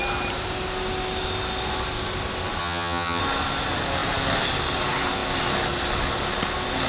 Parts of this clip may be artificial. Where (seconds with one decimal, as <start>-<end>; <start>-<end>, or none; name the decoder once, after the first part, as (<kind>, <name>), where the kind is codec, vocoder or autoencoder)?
2.6-3.2 (vocoder, HiFi-GAN)